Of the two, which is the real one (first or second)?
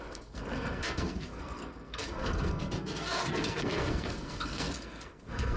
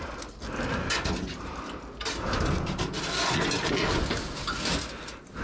second